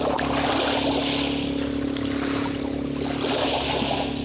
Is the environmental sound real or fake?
real